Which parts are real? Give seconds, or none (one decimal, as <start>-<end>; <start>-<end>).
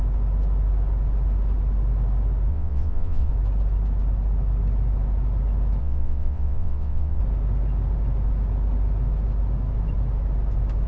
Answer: 0.0-2.5; 3.3-5.8; 7.2-10.9